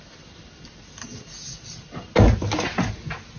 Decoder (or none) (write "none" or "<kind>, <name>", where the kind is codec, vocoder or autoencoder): none